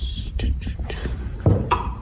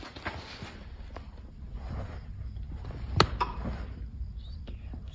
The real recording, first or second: second